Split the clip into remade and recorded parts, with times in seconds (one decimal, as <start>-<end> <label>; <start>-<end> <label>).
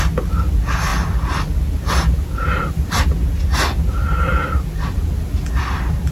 0.0-6.1 recorded